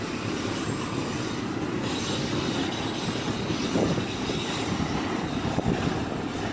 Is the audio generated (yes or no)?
no